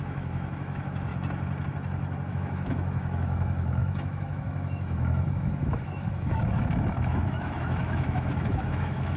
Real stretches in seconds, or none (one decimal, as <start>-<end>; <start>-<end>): 1.1-2.3